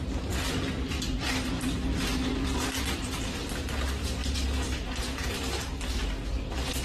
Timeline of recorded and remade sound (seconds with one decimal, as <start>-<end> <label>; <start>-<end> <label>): 0.0-6.8 recorded